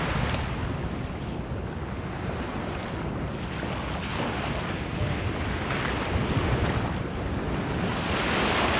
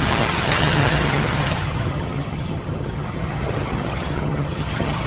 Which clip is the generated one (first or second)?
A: second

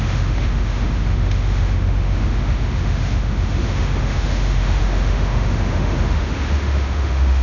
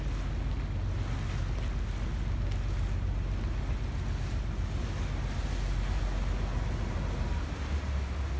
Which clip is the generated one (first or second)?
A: first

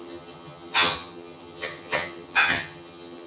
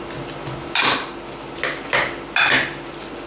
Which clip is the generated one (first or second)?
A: first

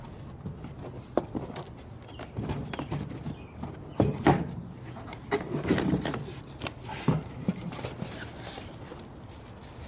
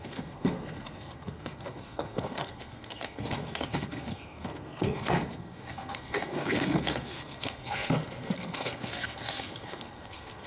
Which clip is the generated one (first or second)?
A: second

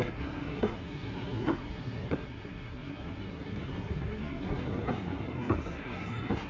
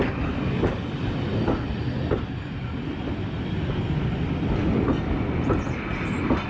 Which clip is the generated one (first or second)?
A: first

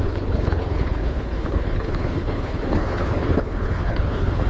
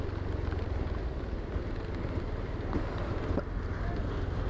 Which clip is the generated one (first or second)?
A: first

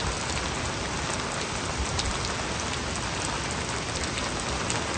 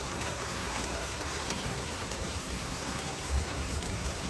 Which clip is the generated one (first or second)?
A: second